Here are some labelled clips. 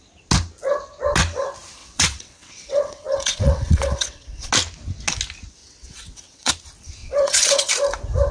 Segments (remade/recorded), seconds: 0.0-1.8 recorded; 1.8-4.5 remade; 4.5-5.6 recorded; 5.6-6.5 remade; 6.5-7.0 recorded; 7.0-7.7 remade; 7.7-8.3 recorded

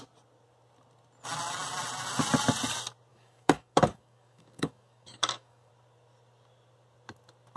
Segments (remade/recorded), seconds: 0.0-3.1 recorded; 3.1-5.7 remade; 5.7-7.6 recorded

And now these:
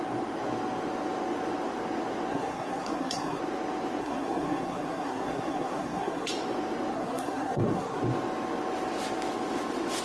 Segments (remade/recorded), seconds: 0.0-2.3 recorded; 2.3-3.4 remade; 3.4-4.0 recorded; 4.0-6.3 remade; 6.3-6.9 recorded; 6.9-8.0 remade; 8.0-10.0 recorded

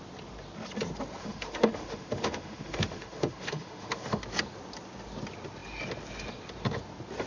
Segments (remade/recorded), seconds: 0.0-1.2 recorded; 1.2-4.2 remade; 4.2-7.3 recorded

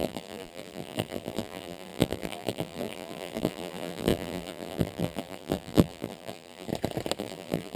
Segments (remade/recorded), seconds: 0.0-6.7 remade; 6.7-7.2 recorded; 7.2-7.8 remade

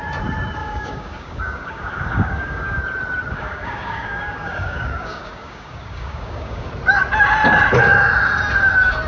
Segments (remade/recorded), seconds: 0.0-0.6 recorded; 0.6-2.8 remade; 2.8-3.3 recorded; 3.3-6.7 remade; 6.7-9.1 recorded